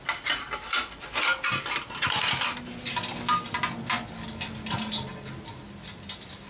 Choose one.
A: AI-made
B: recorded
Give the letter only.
B